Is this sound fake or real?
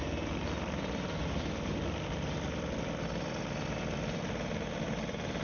real